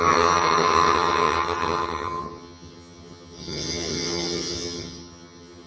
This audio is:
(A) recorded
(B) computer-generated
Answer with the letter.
B